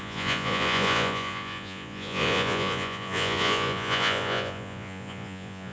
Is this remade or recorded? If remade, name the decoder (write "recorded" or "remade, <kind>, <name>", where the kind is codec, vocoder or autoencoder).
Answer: remade, vocoder, Vocos